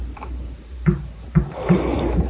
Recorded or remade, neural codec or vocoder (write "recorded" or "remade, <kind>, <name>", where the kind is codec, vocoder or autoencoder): remade, vocoder, BigVGAN v2